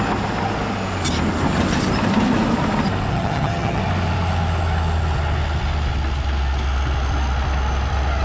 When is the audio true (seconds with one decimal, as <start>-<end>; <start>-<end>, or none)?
0.0-3.1; 3.8-8.2